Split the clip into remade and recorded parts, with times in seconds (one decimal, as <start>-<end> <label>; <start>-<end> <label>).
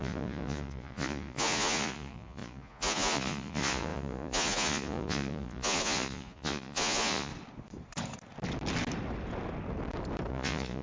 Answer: 0.0-7.3 remade; 7.3-10.3 recorded; 10.3-10.8 remade